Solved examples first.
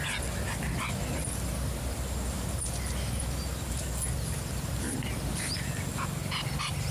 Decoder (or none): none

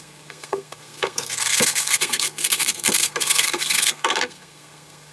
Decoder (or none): codec, SNAC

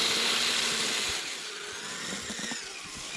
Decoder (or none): none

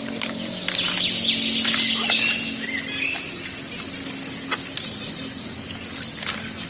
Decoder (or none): none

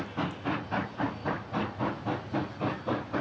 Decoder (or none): none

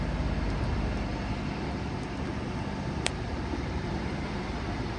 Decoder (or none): none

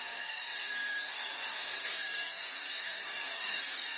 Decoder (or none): codec, SNAC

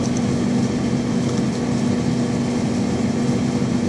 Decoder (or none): none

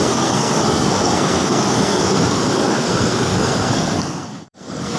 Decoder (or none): codec, SNAC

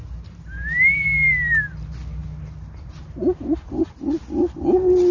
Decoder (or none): none